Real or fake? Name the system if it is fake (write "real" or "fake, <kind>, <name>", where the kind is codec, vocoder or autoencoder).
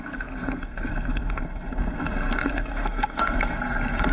fake, codec, SNAC